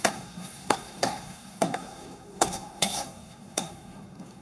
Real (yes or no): no